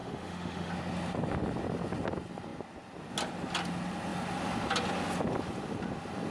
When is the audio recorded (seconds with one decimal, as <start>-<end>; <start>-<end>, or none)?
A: 0.7-6.3